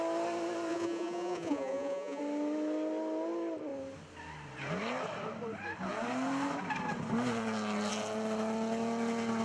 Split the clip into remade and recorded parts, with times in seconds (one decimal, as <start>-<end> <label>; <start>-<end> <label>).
0.0-0.7 recorded; 0.7-2.2 remade; 2.2-9.4 recorded